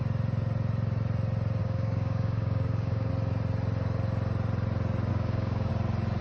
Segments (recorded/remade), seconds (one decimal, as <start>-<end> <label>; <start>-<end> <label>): 0.0-1.6 recorded; 1.6-3.1 remade; 3.1-5.1 recorded; 5.1-5.7 remade; 5.7-6.2 recorded